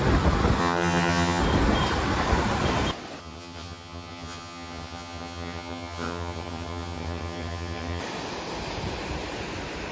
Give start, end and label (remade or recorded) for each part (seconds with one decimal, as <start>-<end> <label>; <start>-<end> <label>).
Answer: 0.0-0.6 recorded; 0.6-1.4 remade; 1.4-3.2 recorded; 3.2-8.0 remade; 8.0-9.9 recorded